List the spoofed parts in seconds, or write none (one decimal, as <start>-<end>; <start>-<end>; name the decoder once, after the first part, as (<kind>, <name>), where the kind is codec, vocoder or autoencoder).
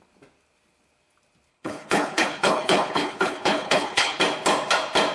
1.5-4.2 (codec, HILCodec)